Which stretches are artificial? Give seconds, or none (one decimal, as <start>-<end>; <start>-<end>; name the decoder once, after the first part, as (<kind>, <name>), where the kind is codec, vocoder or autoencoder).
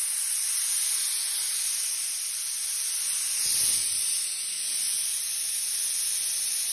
none